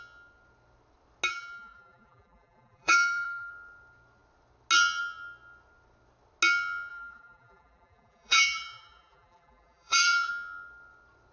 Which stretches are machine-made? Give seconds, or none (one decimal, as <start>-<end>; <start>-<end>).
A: 1.3-3.5; 6.9-10.3